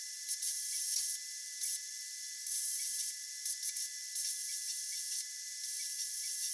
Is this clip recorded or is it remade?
remade